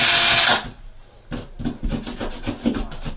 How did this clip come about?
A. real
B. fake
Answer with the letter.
A